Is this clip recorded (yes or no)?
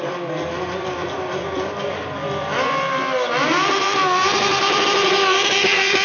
no